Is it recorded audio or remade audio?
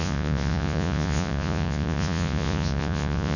remade